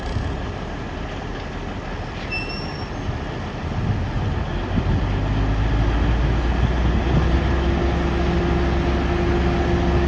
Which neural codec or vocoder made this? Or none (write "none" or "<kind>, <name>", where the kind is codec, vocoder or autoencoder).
none